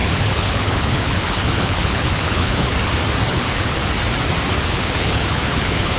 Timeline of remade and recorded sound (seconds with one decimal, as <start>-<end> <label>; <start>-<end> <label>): 0.0-2.7 remade; 2.7-3.3 recorded; 3.3-3.8 remade; 3.8-4.7 recorded; 4.7-6.0 remade